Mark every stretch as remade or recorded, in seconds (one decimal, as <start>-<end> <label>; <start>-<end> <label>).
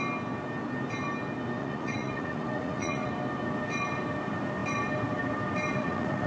0.0-1.6 recorded; 1.6-3.1 remade; 3.1-5.7 recorded; 5.7-6.3 remade